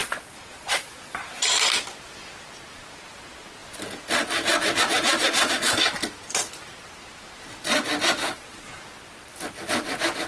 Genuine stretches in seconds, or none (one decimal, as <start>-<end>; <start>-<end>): 1.4-8.2; 8.8-10.3